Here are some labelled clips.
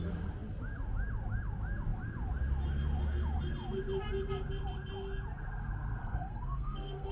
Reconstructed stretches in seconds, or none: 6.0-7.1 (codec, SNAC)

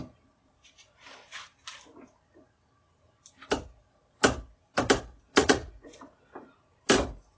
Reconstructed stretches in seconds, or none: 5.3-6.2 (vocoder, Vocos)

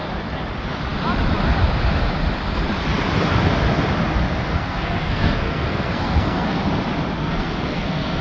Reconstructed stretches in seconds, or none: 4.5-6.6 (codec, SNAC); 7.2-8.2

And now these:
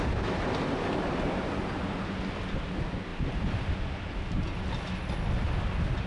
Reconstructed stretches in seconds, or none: none

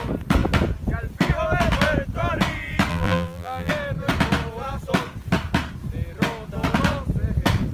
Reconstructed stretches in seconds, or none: 2.9-3.7 (vocoder, BigVGAN v2)

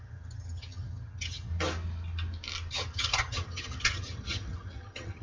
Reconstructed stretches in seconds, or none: 0.0-1.5 (vocoder, HiFi-GAN); 2.7-5.2